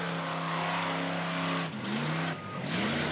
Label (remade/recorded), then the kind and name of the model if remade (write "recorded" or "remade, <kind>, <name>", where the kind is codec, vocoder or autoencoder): recorded